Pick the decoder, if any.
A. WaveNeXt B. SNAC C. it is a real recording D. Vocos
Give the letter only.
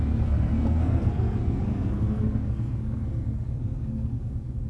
B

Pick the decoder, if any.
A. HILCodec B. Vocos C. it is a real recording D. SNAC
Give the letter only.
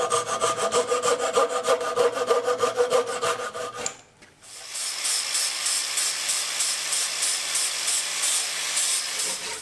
C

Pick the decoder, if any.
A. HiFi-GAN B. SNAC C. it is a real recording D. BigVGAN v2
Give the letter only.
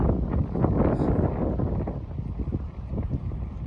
C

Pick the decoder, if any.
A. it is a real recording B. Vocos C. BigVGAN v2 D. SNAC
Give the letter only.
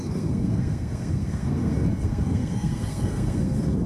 D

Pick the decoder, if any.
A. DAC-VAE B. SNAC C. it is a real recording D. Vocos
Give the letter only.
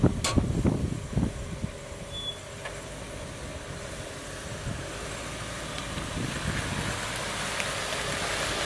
C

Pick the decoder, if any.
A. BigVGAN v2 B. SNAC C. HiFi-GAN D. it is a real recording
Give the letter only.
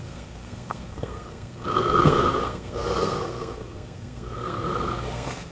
B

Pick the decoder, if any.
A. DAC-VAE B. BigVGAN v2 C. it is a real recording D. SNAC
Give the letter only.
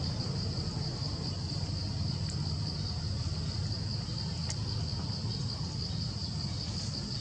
C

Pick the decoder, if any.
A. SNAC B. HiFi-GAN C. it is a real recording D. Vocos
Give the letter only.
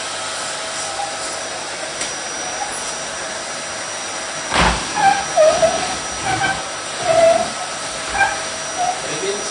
C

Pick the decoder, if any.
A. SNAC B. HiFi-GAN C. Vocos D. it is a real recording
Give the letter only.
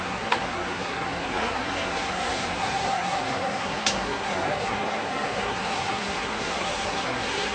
A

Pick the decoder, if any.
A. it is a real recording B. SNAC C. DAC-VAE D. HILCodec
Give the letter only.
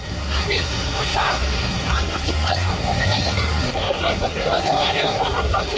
B